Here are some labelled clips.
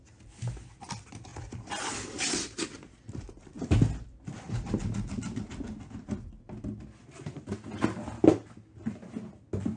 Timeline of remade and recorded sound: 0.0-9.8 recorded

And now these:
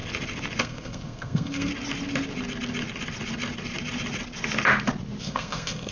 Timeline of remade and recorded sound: 0.0-0.6 recorded; 0.6-1.7 remade; 1.7-5.2 recorded; 5.2-5.9 remade

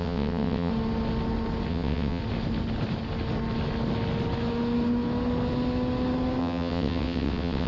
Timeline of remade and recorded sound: 0.0-0.7 remade; 0.7-1.7 recorded; 1.7-2.2 remade; 2.2-6.4 recorded; 6.4-7.7 remade

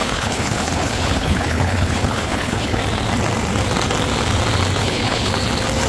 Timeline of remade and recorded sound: 0.0-2.8 remade; 2.8-4.8 recorded; 4.8-5.3 remade; 5.3-5.9 recorded

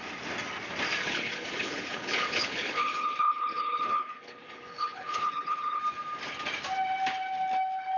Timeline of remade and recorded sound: 0.0-1.0 recorded; 1.0-5.8 remade; 5.8-8.0 recorded

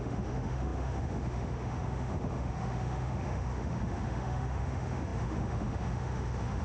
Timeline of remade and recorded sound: 0.0-6.6 remade